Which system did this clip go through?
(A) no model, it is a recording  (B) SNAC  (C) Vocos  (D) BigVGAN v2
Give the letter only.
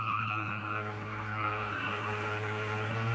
B